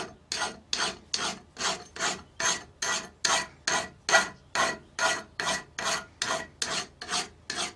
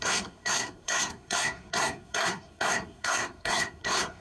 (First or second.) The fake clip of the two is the second